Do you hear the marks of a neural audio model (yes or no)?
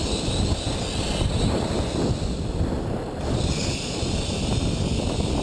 no